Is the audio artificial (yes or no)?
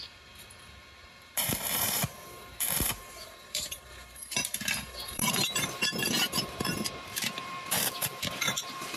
yes